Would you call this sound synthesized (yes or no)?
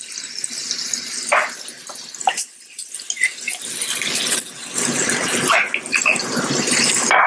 no